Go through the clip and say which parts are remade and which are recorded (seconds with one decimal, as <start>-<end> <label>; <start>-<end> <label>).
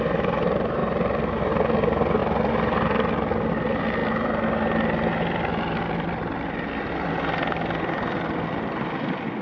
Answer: 0.0-9.4 recorded